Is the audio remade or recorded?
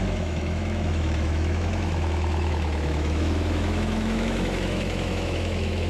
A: remade